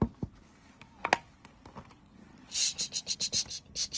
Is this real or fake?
real